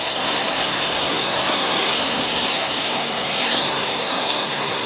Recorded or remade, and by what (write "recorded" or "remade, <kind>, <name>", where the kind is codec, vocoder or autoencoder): remade, codec, SNAC